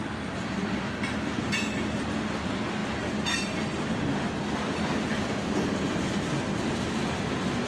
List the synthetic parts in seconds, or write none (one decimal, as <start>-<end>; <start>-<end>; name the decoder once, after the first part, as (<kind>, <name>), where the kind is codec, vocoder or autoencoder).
none